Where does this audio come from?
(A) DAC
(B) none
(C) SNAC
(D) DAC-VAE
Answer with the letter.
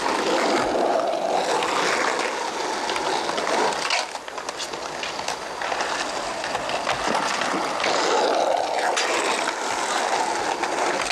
B